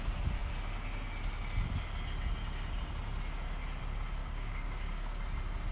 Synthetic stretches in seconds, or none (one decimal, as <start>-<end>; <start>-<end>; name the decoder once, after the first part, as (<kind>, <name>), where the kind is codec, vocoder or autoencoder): 4.2-5.2 (codec, DAC)